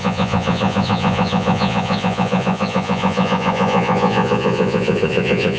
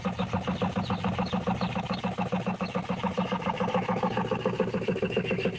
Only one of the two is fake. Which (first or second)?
first